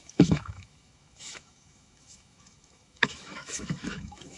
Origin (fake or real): fake